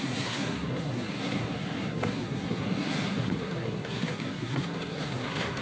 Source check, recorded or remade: remade